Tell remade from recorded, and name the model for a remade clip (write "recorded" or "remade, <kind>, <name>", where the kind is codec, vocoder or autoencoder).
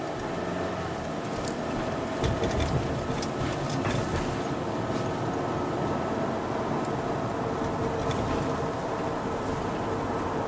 recorded